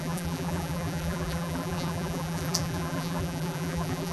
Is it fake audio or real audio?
fake